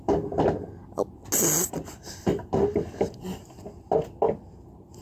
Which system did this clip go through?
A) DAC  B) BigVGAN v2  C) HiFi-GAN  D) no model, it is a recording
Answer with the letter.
D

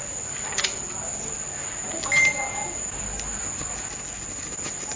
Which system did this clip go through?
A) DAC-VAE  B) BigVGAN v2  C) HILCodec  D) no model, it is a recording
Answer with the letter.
D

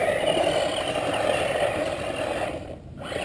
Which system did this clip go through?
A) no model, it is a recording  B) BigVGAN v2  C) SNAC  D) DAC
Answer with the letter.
A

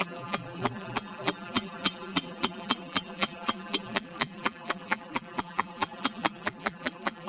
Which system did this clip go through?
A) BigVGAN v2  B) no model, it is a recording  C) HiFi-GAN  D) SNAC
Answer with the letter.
A